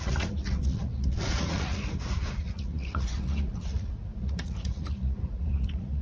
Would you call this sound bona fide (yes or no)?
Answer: no